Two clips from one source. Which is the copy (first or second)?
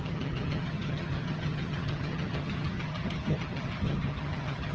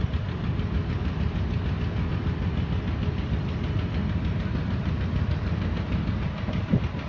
first